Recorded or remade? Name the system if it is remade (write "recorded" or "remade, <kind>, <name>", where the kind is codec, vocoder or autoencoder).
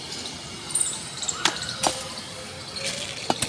recorded